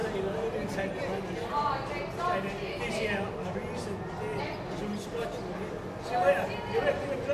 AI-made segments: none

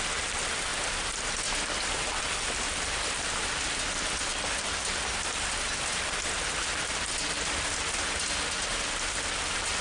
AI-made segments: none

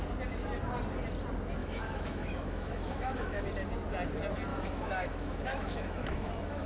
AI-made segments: 1.6-3.4 (autoencoder, DAC-VAE); 4.5-6.7

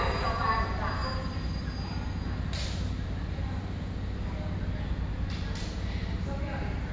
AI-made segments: none